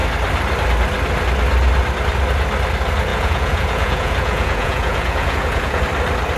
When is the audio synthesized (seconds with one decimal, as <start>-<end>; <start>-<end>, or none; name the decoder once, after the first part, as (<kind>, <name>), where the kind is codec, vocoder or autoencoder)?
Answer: 3.1-5.8 (vocoder, Vocos)